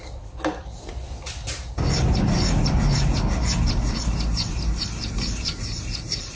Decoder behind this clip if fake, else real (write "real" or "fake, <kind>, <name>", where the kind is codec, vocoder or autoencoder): real